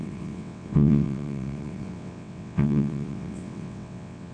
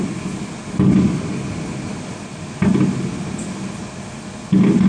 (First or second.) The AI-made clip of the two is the first